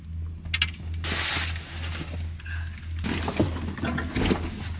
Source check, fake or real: real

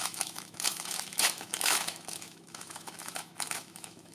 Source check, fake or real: fake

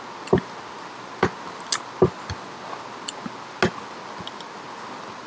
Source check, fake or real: real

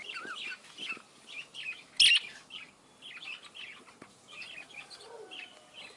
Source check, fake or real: real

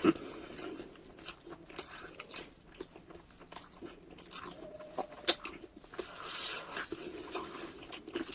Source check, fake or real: real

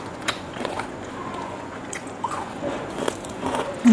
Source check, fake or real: fake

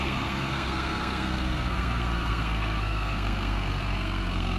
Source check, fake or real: fake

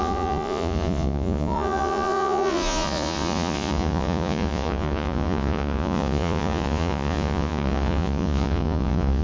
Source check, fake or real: fake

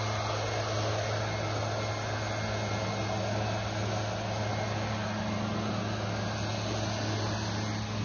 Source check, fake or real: real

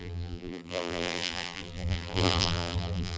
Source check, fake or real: fake